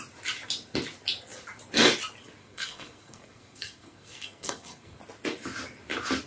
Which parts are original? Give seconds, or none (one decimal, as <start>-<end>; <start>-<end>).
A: 0.0-2.4; 5.0-6.3